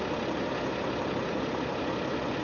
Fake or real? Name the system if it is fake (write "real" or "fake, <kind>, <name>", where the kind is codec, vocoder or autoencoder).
real